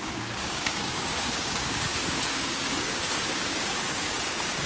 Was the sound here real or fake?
fake